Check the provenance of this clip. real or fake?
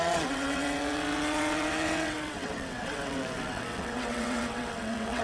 fake